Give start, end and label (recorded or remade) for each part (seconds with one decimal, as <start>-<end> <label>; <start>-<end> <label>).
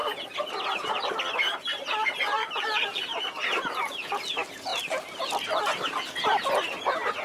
0.0-2.4 recorded; 2.4-4.1 remade; 4.1-4.7 recorded; 4.7-5.2 remade; 5.2-7.2 recorded